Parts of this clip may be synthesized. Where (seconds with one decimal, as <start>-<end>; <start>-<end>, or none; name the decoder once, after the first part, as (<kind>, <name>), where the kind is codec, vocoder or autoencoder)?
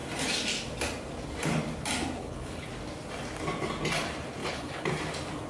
2.2-2.7 (codec, HILCodec); 4.4-4.9